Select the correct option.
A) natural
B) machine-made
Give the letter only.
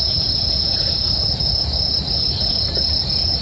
A